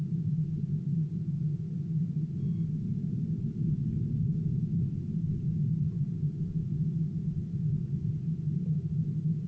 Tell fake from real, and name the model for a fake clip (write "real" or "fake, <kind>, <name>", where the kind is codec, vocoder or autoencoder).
real